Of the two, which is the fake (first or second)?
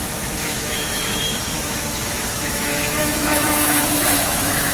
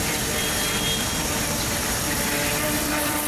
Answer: first